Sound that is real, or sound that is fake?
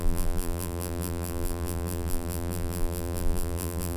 fake